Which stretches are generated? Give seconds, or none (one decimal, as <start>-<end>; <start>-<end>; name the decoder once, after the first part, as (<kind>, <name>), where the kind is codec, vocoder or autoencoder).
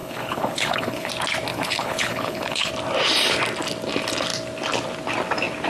0.0-1.1 (codec, HILCodec); 1.5-2.7